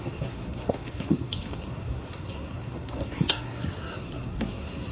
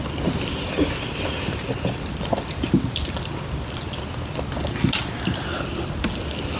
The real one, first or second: second